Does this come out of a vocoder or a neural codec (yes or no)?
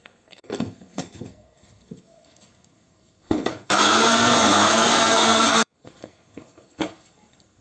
yes